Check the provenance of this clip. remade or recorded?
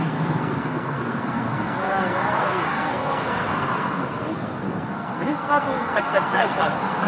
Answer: remade